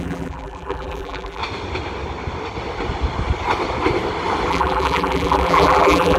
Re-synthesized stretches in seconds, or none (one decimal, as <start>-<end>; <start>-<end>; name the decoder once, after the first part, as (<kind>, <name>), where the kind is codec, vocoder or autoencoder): 0.0-1.4 (vocoder, BigVGAN v2); 4.5-6.2